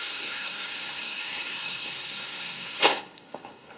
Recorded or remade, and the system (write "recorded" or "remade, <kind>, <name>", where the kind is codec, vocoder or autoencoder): remade, codec, SNAC